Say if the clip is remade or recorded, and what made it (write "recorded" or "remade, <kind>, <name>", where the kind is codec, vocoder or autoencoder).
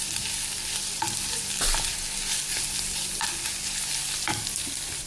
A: recorded